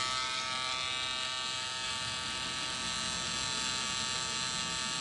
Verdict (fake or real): real